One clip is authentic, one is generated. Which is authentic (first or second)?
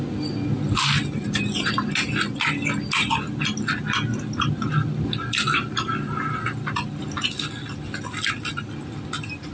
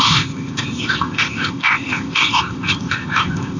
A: first